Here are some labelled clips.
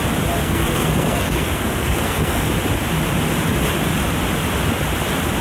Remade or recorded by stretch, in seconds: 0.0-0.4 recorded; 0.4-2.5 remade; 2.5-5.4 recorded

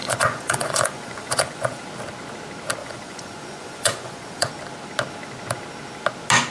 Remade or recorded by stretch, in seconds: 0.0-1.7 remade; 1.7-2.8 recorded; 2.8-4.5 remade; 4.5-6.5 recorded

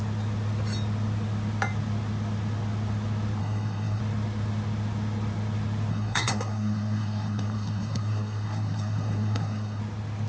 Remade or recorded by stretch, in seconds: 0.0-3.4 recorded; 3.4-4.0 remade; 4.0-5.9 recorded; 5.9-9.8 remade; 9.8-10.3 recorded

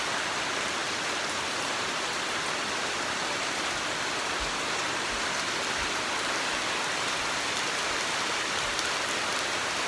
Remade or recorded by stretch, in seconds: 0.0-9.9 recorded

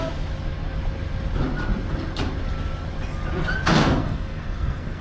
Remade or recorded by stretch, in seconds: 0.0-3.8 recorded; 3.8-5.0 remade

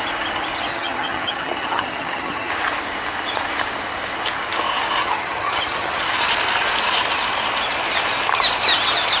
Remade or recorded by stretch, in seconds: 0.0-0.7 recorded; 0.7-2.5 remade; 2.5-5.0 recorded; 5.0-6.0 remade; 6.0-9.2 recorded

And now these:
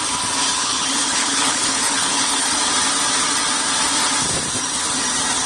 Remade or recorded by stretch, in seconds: 0.0-0.5 recorded; 0.5-2.6 remade; 2.6-5.5 recorded